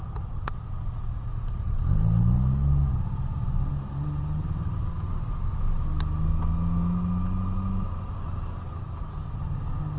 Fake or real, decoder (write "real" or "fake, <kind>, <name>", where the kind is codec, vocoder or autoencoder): real